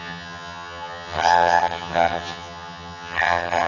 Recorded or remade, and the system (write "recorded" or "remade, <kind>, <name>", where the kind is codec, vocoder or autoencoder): remade, vocoder, HiFi-GAN